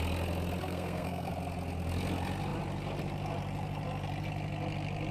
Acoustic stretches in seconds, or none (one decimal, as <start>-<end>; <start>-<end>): 0.0-0.6; 1.3-5.1

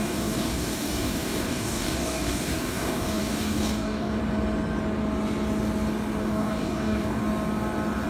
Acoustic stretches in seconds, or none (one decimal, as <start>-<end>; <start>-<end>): 4.2-6.2; 7.2-8.1

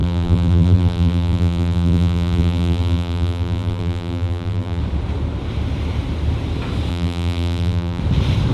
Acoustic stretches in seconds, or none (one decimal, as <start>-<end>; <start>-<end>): 4.8-6.9; 8.0-8.5

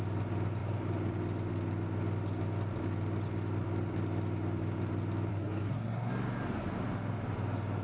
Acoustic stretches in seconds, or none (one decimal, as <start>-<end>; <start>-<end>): 0.0-5.3; 6.1-7.8

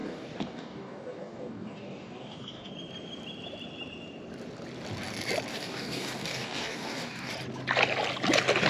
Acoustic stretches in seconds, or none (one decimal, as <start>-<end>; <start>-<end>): 2.7-5.5; 7.3-8.7

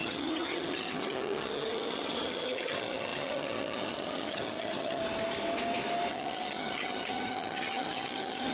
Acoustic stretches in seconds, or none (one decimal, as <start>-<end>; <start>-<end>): 5.0-6.1

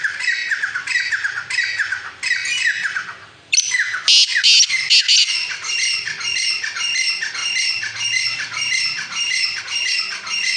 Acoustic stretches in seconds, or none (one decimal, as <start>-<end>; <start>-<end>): 0.0-10.6

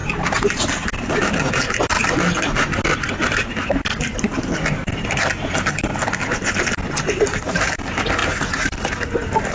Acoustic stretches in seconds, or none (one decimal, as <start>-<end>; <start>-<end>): 0.0-9.5